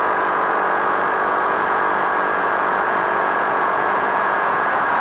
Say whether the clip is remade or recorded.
remade